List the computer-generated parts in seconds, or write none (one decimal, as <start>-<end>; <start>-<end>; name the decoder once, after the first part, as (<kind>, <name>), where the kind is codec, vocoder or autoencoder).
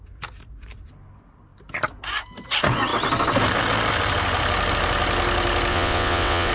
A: 5.7-6.5 (vocoder, WaveNeXt)